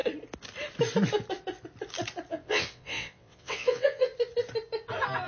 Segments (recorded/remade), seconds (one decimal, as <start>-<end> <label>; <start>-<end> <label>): 0.0-2.3 recorded; 2.3-4.1 remade; 4.1-5.3 recorded